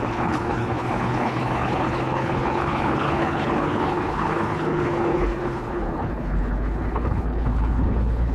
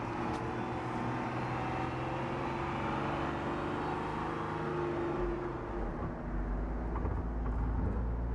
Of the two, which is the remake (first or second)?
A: first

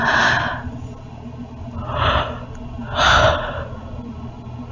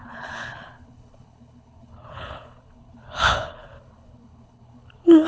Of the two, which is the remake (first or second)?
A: second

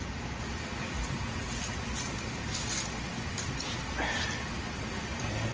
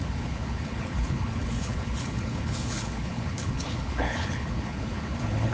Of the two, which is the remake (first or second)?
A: second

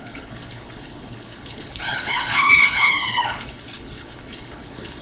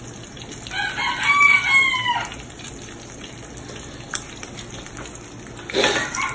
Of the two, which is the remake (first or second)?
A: first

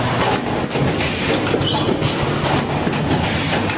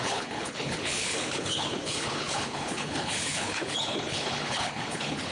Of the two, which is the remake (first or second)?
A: second